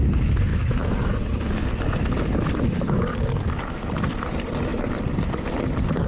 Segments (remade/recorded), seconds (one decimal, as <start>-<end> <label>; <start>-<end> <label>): 0.0-0.5 remade; 0.5-4.2 recorded; 4.2-4.7 remade; 4.7-5.5 recorded; 5.5-6.1 remade